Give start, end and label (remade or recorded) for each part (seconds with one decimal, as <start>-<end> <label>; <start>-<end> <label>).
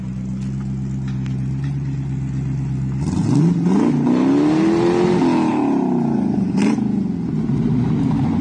0.0-5.5 recorded; 5.5-7.0 remade; 7.0-8.4 recorded